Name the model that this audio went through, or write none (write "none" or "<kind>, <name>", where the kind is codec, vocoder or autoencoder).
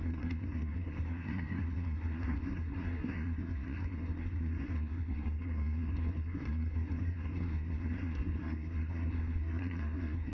codec, SNAC